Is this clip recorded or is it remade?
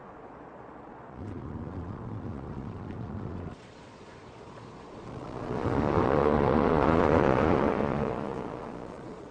remade